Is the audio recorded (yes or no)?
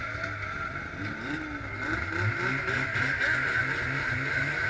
yes